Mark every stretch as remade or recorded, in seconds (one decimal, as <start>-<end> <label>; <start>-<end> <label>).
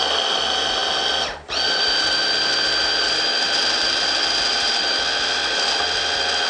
0.0-6.5 recorded